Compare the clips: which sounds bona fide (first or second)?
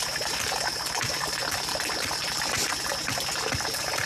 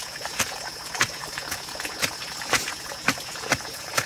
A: first